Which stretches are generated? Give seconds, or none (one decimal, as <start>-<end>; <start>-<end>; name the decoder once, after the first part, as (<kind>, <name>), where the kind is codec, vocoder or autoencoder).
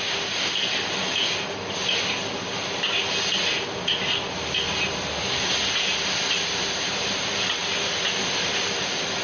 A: 7.6-9.2 (vocoder, BigVGAN v2)